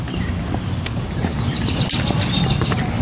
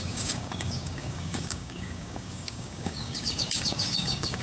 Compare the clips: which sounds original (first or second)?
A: first